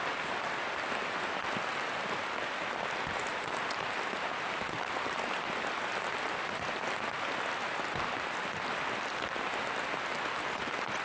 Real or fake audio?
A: real